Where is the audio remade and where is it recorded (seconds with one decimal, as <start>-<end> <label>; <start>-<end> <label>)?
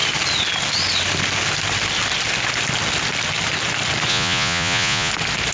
0.0-4.1 recorded; 4.1-5.1 remade; 5.1-5.5 recorded